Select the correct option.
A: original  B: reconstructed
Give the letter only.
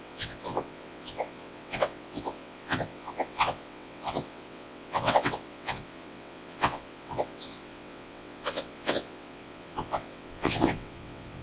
B